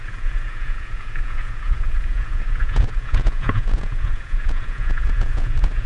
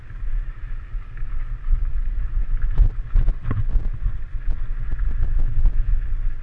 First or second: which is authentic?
second